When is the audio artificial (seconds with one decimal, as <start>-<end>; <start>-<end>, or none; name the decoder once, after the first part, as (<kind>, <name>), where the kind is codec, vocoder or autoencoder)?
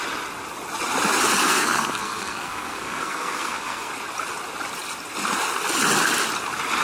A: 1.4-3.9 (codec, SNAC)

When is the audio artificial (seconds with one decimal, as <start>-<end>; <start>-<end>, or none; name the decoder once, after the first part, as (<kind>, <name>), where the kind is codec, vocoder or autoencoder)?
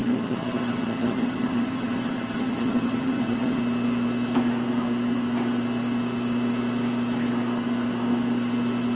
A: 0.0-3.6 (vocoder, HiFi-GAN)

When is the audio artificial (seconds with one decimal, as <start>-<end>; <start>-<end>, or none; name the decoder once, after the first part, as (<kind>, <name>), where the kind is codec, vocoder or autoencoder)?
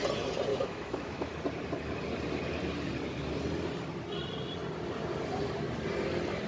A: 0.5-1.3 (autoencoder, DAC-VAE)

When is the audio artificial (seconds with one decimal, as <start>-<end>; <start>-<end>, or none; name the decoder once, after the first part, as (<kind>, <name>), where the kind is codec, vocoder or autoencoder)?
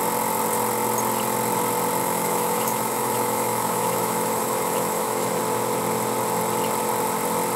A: 2.0-5.4 (autoencoder, DAC-VAE)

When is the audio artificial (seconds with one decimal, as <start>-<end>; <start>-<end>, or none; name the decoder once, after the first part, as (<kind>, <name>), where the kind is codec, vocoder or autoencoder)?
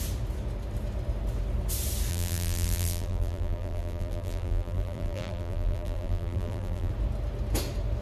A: 2.1-6.9 (vocoder, BigVGAN v2)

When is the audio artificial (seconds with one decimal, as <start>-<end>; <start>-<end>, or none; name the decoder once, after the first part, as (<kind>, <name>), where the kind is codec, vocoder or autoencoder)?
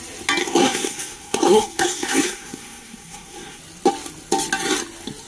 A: 0.4-3.6 (codec, SNAC)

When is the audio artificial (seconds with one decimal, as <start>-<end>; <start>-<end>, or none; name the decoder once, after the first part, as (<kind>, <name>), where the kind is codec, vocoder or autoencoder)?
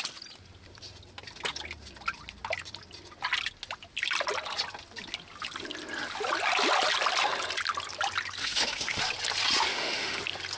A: 8.4-9.0 (autoencoder, DAC-VAE); 9.7-10.2